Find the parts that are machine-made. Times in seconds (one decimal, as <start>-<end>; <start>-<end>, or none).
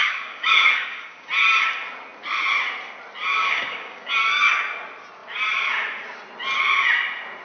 0.0-1.3; 3.3-4.1